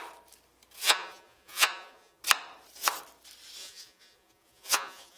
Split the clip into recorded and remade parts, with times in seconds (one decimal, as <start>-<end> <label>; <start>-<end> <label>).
0.0-0.8 recorded; 0.8-2.2 remade; 2.2-3.6 recorded; 3.6-5.2 remade